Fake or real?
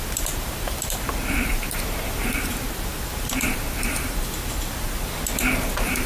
fake